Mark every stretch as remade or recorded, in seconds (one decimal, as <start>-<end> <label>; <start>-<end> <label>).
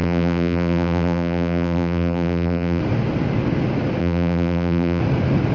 0.0-2.8 remade; 2.8-4.0 recorded; 4.0-5.0 remade; 5.0-5.5 recorded